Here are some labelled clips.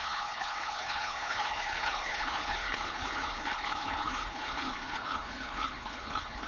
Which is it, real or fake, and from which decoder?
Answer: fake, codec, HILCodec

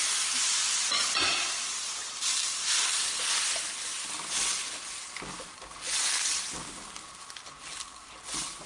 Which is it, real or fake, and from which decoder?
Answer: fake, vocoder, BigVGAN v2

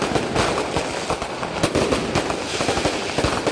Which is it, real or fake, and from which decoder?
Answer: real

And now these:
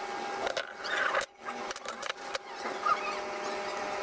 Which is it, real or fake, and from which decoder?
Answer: real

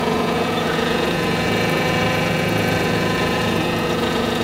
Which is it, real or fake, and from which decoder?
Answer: fake, vocoder, Vocos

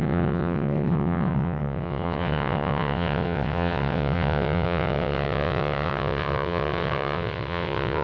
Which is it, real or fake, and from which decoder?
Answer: fake, vocoder, WaveNeXt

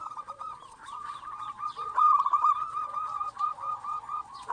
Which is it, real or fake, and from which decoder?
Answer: fake, vocoder, Vocos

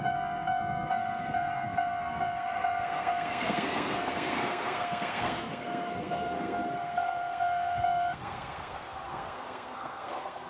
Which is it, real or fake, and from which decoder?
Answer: fake, codec, SNAC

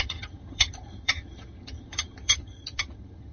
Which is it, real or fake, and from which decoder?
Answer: fake, vocoder, HiFi-GAN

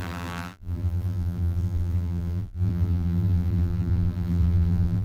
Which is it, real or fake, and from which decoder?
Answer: fake, vocoder, BigVGAN v2